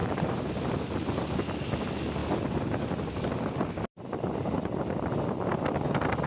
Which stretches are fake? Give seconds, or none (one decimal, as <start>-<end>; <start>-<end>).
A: 0.0-0.5